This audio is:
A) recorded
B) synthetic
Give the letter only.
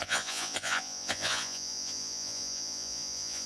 B